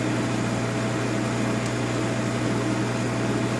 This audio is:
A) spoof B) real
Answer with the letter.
B